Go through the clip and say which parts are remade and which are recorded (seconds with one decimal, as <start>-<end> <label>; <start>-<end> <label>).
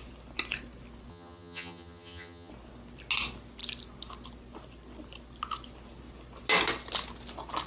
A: 0.0-1.1 recorded; 1.1-2.5 remade; 2.5-7.7 recorded